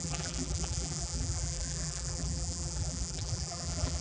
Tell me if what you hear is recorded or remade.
remade